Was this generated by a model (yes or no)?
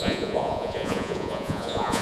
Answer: yes